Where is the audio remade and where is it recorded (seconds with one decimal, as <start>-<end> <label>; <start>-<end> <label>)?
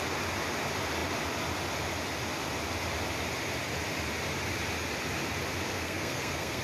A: 0.0-5.7 recorded; 5.7-6.6 remade